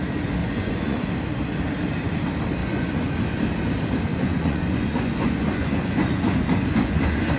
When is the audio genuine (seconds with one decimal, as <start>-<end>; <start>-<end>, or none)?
0.0-0.4; 1.1-2.6; 3.2-4.1